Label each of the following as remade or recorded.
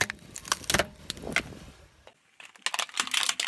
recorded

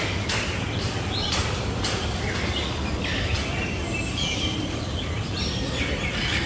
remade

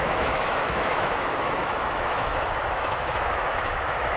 remade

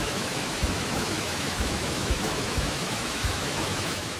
remade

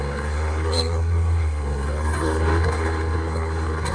remade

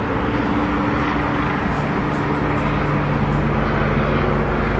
recorded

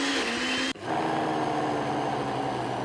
recorded